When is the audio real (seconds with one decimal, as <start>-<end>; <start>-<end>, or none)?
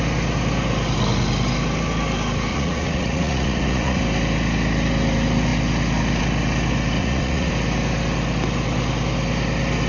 0.0-2.5; 4.0-7.0; 7.5-9.9